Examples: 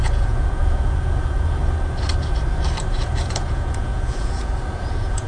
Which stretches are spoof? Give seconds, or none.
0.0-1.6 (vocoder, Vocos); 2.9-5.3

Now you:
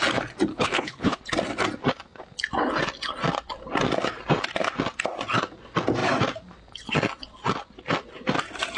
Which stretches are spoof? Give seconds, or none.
0.5-1.2 (codec, HILCodec)

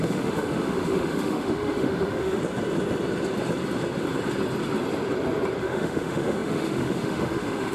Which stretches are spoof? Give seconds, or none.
0.0-2.4 (autoencoder, DAC-VAE); 5.6-7.7

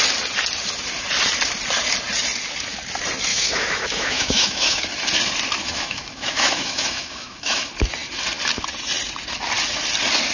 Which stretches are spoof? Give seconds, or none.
3.3-4.8 (autoencoder, DAC-VAE); 5.6-7.7

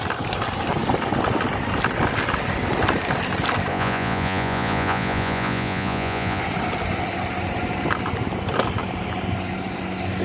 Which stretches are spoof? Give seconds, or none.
3.7-6.4 (vocoder, Vocos)

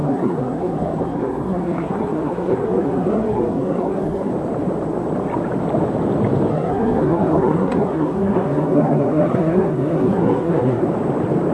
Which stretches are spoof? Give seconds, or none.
0.0-4.3 (codec, SNAC); 6.5-10.8

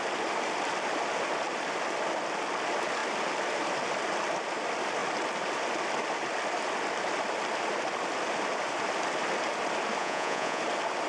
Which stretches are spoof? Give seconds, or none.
10.0-10.6 (vocoder, Vocos)